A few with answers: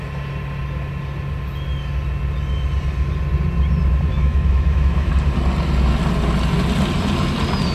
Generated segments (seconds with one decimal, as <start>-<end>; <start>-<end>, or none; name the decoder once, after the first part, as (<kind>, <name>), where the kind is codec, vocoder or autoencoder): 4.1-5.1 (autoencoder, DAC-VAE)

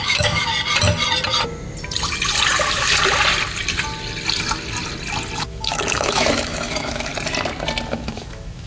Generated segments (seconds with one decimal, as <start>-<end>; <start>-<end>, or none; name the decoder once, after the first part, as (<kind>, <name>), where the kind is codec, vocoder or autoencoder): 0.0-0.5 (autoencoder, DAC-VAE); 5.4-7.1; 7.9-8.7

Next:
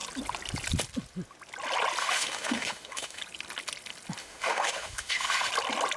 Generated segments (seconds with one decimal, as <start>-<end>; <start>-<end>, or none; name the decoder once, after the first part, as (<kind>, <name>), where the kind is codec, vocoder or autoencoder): 2.0-3.2 (autoencoder, DAC-VAE); 4.2-5.5

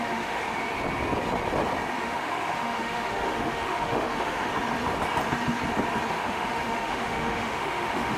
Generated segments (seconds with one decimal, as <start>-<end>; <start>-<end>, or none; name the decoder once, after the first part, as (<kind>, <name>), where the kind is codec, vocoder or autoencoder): 0.0-0.4 (autoencoder, DAC-VAE); 2.0-4.5; 6.1-8.2

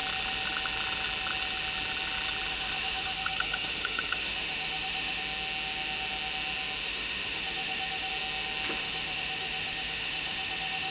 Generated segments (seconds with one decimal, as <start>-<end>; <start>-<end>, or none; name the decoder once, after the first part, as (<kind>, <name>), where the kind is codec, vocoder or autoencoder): 2.5-5.2 (autoencoder, DAC-VAE); 6.8-8.1; 8.8-10.9